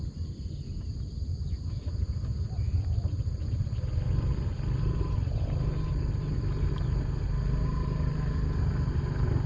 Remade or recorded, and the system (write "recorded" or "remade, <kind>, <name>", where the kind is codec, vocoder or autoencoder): recorded